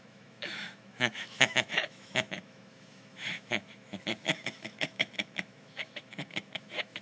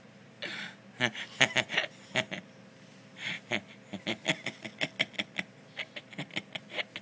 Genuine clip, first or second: second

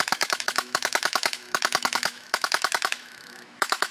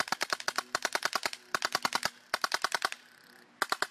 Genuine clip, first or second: second